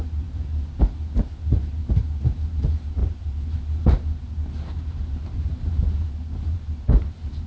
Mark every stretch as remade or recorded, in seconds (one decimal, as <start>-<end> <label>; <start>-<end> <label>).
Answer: 0.0-0.5 remade; 0.5-1.4 recorded; 1.4-7.5 remade

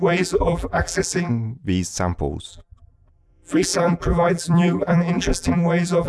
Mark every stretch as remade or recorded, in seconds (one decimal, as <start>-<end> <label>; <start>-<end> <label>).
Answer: 0.0-1.3 remade; 1.3-2.5 recorded; 2.5-6.1 remade

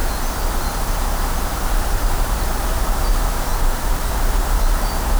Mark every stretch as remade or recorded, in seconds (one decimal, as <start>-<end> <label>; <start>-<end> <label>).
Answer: 0.0-3.5 remade; 3.5-4.0 recorded; 4.0-5.2 remade

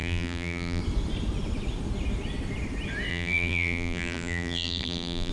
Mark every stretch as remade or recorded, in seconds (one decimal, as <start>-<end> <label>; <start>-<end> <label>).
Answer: 0.0-0.8 remade; 0.8-3.1 recorded; 3.1-5.3 remade